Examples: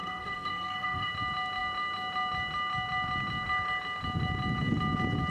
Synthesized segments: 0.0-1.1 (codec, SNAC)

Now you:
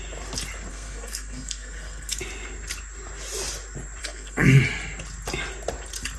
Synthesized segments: 0.7-2.2 (codec, SNAC); 4.0-4.6

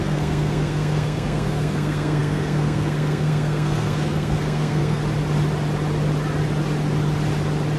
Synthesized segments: 0.0-5.0 (codec, SNAC)

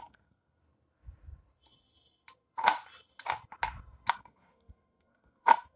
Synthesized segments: 0.0-0.6 (codec, SNAC); 4.1-5.8

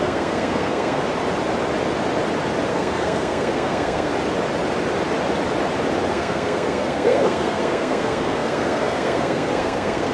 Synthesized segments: 0.0-1.0 (codec, SNAC); 2.7-4.1; 6.1-10.1